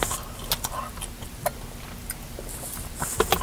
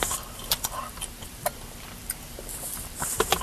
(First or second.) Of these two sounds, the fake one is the second